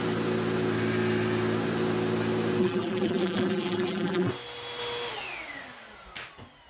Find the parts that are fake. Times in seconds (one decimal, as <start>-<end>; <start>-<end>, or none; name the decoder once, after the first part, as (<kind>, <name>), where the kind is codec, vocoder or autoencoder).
2.6-4.3 (vocoder, BigVGAN v2)